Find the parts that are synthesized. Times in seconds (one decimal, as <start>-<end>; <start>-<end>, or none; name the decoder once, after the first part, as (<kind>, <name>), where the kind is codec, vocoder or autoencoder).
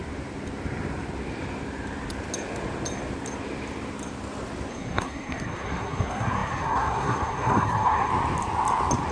4.7-8.1 (codec, SNAC)